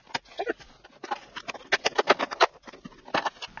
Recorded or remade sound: recorded